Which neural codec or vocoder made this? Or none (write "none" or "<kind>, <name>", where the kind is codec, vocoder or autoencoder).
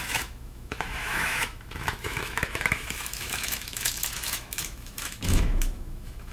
autoencoder, DAC-VAE